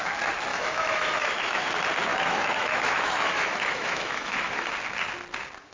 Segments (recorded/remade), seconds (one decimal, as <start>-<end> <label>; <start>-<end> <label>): 0.0-0.5 recorded; 0.5-1.7 remade; 1.7-2.1 recorded; 2.1-4.7 remade; 4.7-5.7 recorded